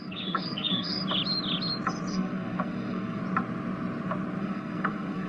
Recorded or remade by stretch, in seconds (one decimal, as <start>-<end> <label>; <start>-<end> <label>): 0.0-1.0 remade; 1.0-2.1 recorded; 2.1-3.2 remade; 3.2-4.4 recorded; 4.4-5.3 remade